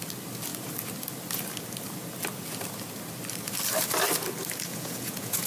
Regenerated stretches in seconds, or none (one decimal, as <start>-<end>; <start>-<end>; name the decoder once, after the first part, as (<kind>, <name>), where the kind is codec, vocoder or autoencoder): 4.7-5.5 (vocoder, Vocos)